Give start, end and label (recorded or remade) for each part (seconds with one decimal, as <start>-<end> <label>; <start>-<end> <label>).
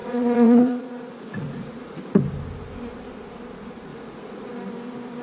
0.0-2.2 remade; 2.2-3.9 recorded; 3.9-4.5 remade; 4.5-5.2 recorded